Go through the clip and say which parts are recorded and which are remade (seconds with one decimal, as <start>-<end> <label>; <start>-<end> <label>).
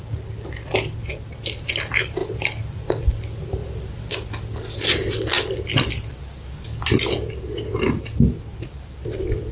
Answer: 0.0-3.6 recorded; 3.6-4.1 remade; 4.1-8.5 recorded; 8.5-9.5 remade